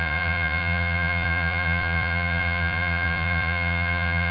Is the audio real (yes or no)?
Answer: no